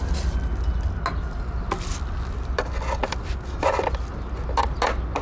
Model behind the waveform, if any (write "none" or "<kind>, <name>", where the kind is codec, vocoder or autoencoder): none